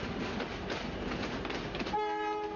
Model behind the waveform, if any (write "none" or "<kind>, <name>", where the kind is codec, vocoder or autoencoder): none